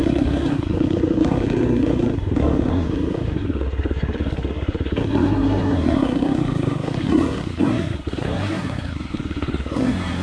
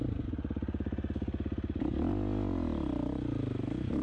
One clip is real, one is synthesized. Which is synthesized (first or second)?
first